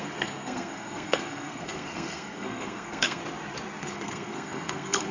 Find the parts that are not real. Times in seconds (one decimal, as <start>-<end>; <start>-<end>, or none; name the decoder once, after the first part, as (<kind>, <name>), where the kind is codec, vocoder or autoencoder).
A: 0.0-3.2 (codec, SNAC); 3.8-5.1